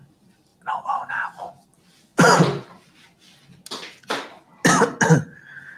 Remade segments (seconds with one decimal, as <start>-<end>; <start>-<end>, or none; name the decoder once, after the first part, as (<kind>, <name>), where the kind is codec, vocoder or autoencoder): none